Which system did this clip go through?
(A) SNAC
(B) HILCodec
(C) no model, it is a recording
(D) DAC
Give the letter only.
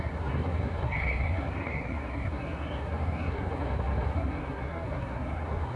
A